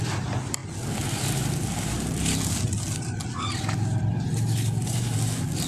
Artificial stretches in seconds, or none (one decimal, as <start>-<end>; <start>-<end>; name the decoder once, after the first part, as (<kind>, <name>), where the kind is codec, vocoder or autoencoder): none